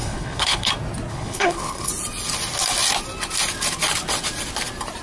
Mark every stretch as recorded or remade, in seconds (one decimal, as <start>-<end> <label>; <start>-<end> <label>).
0.0-0.7 remade; 0.7-1.1 recorded; 1.1-1.9 remade; 1.9-5.0 recorded